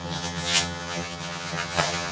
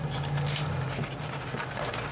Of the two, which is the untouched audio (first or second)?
second